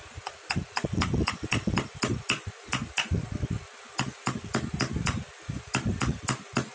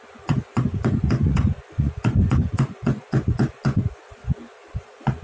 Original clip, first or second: first